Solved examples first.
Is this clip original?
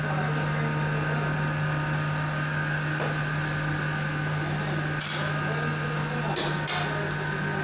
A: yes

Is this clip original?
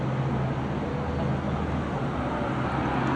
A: yes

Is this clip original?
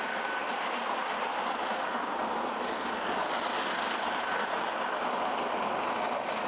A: yes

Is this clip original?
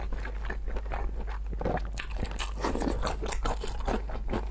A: yes